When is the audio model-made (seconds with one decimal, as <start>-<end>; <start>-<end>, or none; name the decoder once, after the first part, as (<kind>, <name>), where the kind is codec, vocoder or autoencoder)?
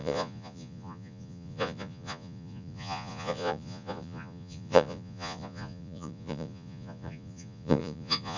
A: 0.0-8.4 (vocoder, Vocos)